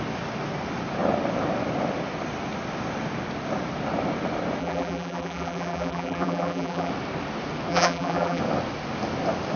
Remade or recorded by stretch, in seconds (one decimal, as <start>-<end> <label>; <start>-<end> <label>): 0.0-4.6 recorded; 4.6-6.9 remade; 6.9-7.7 recorded; 7.7-8.4 remade; 8.4-9.6 recorded